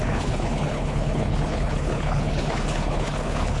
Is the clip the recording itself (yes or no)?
no